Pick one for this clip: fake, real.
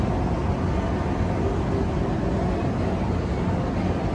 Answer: real